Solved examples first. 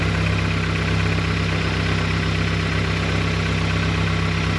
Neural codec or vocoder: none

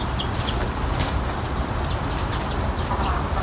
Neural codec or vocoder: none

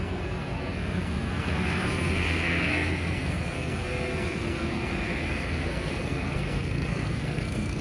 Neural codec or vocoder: codec, SNAC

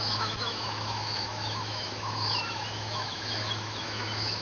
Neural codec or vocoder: autoencoder, DAC-VAE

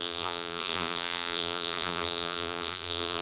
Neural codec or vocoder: vocoder, BigVGAN v2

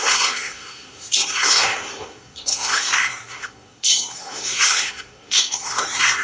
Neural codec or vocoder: codec, SNAC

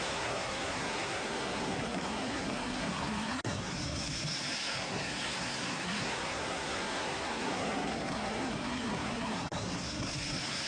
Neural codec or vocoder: codec, SNAC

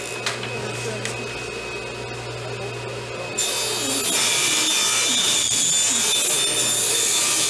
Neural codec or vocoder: none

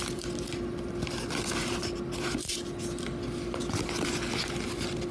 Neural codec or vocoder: none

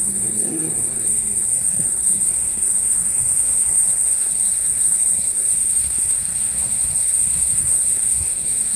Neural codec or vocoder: codec, SNAC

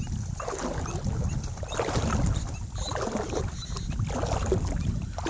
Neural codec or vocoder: none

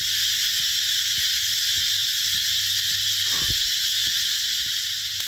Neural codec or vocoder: none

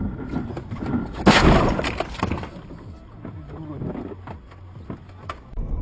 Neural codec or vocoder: none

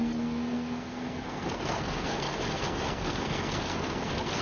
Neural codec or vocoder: codec, SNAC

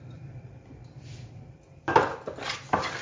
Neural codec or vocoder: vocoder, BigVGAN v2